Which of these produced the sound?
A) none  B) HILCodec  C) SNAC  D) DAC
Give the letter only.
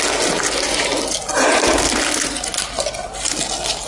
A